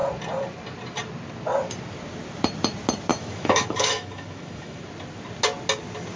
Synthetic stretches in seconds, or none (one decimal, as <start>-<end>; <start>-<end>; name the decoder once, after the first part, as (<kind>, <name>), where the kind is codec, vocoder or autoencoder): 3.1-4.8 (autoencoder, DAC-VAE)